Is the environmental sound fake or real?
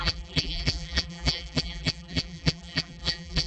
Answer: fake